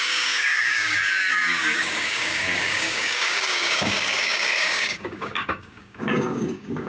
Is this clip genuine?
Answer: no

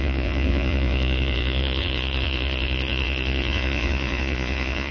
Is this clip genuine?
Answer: no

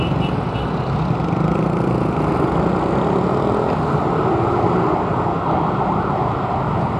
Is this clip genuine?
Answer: yes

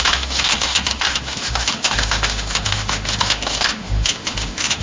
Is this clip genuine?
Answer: no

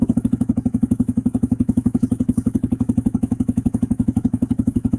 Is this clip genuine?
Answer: no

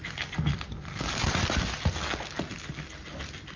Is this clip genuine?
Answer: yes